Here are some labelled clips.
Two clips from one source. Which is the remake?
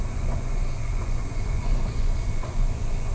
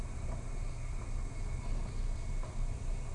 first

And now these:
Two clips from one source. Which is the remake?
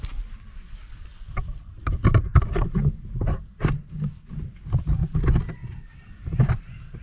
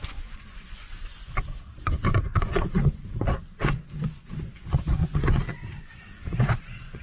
second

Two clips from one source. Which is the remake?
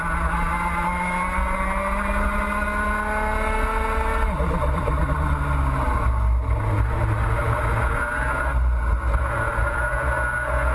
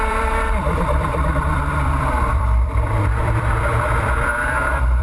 second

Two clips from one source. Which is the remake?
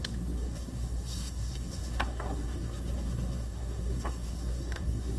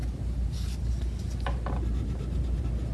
first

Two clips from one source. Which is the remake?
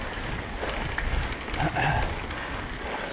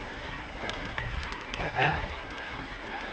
second